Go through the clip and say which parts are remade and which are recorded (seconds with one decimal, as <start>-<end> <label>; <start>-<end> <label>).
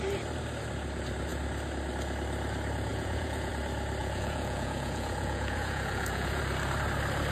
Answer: 0.0-2.9 recorded; 2.9-3.5 remade; 3.5-4.0 recorded; 4.0-6.4 remade; 6.4-7.3 recorded